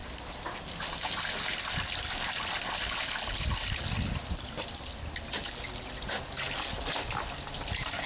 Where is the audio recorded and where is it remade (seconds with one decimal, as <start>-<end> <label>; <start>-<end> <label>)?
0.0-8.1 recorded